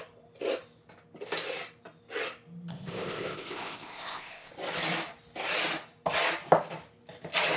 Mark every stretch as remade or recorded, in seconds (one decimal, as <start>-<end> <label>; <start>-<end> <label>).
0.0-2.7 recorded; 2.7-4.5 remade; 4.5-7.6 recorded